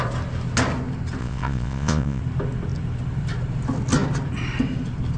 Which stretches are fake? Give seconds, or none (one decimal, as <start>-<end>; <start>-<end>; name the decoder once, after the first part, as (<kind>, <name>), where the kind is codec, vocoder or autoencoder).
1.2-2.2 (vocoder, Vocos)